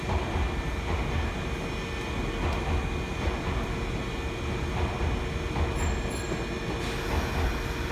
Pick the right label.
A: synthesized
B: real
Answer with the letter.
B